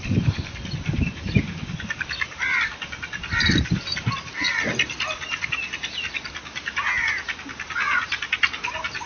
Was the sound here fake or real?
real